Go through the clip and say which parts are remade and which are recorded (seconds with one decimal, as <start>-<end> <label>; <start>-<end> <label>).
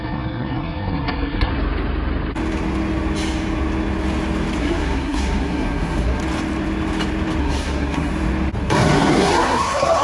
0.0-1.5 remade; 1.5-4.6 recorded; 4.6-6.2 remade; 6.2-7.4 recorded; 7.4-8.1 remade; 8.1-8.6 recorded; 8.6-10.0 remade